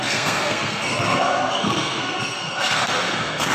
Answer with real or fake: fake